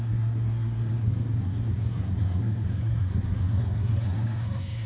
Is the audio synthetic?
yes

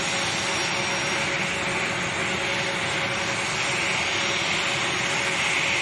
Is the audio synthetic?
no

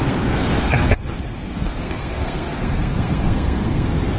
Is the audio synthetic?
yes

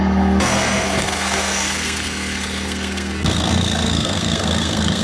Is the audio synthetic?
yes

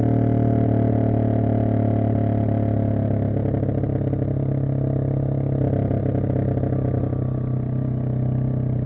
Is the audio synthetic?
no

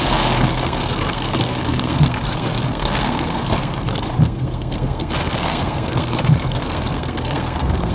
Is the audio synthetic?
yes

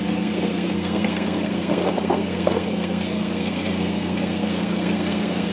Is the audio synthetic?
yes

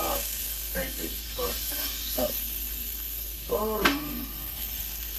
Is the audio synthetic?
yes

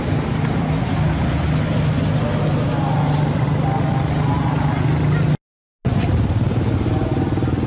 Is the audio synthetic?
no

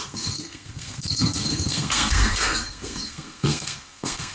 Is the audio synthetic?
yes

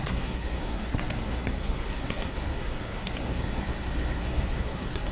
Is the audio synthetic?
yes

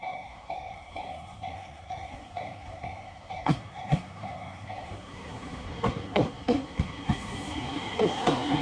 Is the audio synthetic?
yes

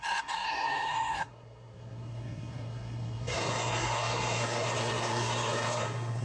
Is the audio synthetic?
yes